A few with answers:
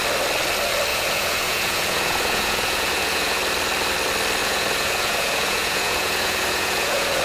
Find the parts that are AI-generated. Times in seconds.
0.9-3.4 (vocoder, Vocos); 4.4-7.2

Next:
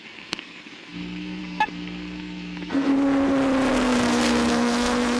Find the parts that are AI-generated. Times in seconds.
0.0-2.9 (codec, SNAC); 3.7-5.2

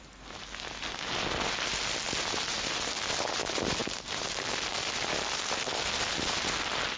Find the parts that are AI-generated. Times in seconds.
none

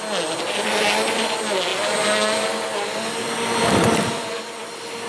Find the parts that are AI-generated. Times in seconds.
none

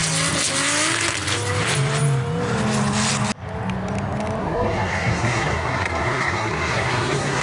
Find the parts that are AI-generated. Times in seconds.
4.4-7.4 (codec, SNAC)

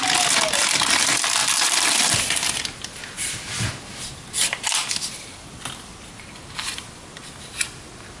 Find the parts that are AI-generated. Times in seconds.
none

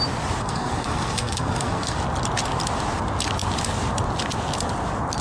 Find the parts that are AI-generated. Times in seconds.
0.4-2.0 (codec, SNAC)

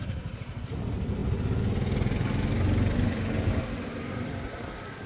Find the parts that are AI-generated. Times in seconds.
0.0-1.2 (vocoder, BigVGAN v2); 3.5-5.1